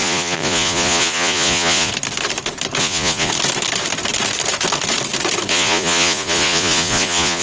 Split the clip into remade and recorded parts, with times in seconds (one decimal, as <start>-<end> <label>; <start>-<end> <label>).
0.0-1.9 remade; 1.9-2.8 recorded; 2.8-3.3 remade; 3.3-5.5 recorded; 5.5-7.4 remade